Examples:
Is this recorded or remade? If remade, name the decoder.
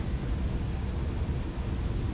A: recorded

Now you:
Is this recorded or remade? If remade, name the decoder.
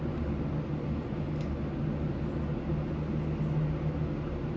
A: recorded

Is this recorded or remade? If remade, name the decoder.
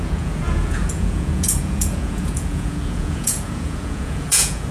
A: remade, vocoder, Vocos